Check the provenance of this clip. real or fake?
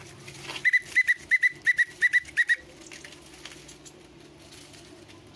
real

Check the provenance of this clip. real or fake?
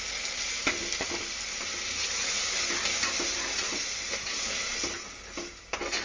real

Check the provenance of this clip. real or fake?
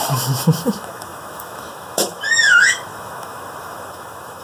fake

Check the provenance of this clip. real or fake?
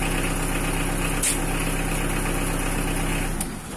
real